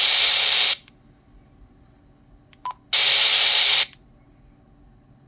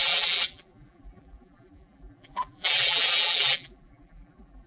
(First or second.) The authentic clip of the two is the first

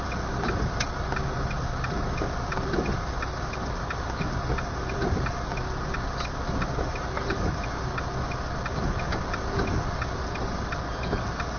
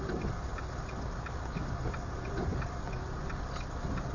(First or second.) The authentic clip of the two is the first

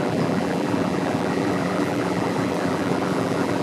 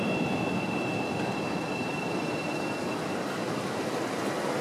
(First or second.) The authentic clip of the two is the second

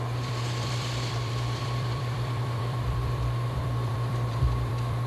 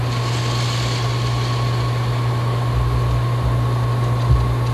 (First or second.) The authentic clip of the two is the second